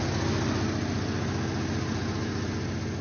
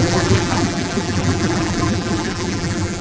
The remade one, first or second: second